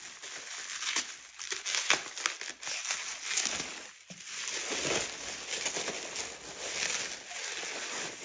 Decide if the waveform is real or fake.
real